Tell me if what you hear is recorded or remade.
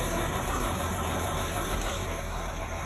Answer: remade